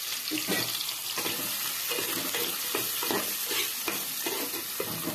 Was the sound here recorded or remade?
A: recorded